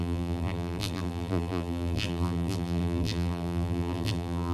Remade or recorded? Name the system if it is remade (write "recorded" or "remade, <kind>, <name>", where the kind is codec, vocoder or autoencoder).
remade, vocoder, BigVGAN v2